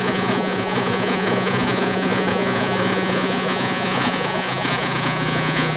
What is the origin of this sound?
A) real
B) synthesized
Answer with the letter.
B